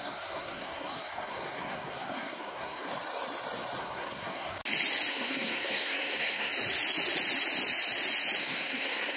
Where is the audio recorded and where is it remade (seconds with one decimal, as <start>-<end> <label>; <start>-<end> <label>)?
0.0-2.9 remade; 2.9-3.8 recorded; 3.8-4.6 remade; 4.6-5.1 recorded; 5.1-6.5 remade; 6.5-8.4 recorded; 8.4-9.2 remade